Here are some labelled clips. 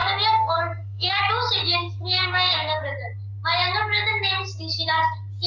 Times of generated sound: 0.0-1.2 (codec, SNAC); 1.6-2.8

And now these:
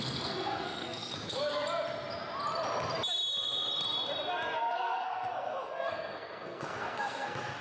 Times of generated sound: 0.0-1.4 (codec, SNAC); 4.6-7.6

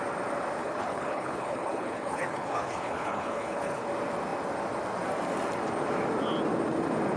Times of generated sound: 0.6-3.9 (codec, HILCodec)

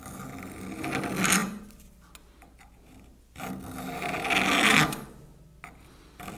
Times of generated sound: none

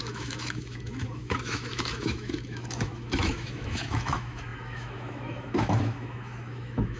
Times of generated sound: 0.0-7.0 (autoencoder, DAC-VAE)

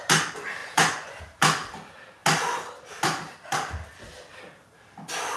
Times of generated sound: 0.6-1.2 (vocoder, Vocos)

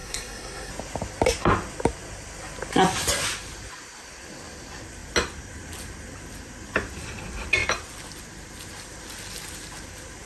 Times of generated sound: 0.0-0.7 (codec, SNAC)

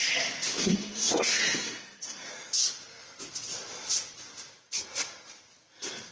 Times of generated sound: 0.6-2.3 (codec, SNAC)